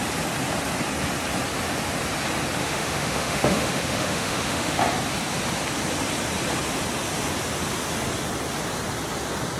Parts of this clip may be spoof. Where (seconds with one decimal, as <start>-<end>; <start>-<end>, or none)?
2.6-4.8